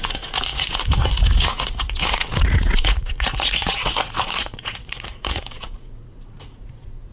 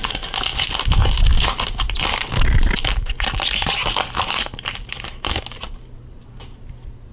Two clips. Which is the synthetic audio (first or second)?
first